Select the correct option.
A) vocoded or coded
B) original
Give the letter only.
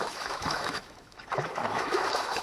A